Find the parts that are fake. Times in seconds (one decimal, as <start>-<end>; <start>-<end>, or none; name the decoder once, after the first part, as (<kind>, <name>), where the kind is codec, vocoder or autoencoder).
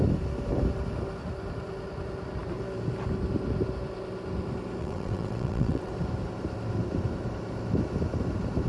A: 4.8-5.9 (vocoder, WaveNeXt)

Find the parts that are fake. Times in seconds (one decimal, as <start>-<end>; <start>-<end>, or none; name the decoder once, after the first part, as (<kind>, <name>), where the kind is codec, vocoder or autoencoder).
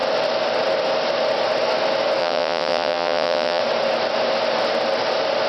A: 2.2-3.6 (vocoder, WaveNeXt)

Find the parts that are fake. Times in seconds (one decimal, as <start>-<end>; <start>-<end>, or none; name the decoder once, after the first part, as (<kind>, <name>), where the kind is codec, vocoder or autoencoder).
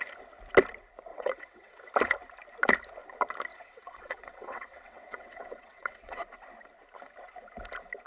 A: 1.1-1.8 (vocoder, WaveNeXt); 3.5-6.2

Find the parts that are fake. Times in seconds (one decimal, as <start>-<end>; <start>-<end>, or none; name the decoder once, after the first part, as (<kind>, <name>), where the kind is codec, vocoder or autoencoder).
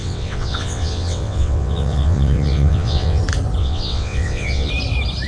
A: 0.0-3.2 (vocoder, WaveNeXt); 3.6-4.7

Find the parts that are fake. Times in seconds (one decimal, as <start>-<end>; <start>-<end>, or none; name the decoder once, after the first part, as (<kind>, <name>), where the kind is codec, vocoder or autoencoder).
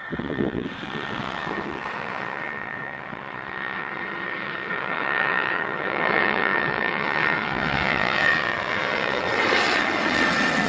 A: 0.0-10.7 (vocoder, WaveNeXt)